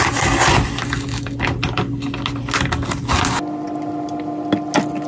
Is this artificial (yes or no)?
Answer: no